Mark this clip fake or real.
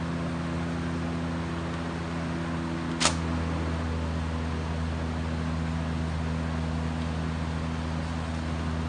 real